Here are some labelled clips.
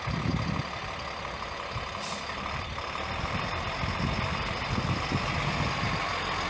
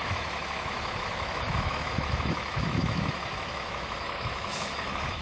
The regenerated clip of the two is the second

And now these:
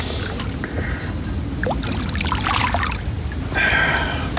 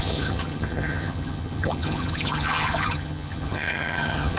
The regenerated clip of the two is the second